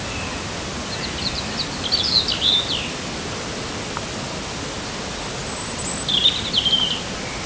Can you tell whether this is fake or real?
real